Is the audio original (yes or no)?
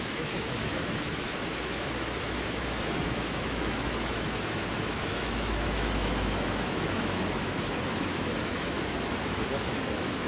no